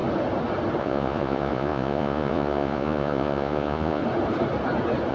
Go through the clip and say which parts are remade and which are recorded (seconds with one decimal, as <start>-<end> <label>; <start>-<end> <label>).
0.0-0.8 recorded; 0.8-4.0 remade; 4.0-5.1 recorded

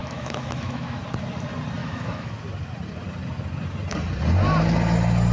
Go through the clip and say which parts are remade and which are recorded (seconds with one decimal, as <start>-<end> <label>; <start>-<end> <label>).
0.0-1.0 remade; 1.0-1.8 recorded; 1.8-2.3 remade; 2.3-5.3 recorded

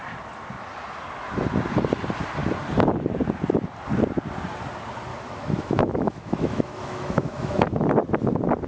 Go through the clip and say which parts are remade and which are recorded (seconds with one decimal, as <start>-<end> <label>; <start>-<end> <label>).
0.0-5.1 recorded; 5.1-7.7 remade; 7.7-8.7 recorded

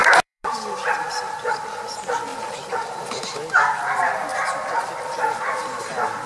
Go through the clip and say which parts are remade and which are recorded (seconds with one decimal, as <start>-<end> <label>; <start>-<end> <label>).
0.0-1.1 remade; 1.1-2.3 recorded; 2.3-3.2 remade; 3.2-6.3 recorded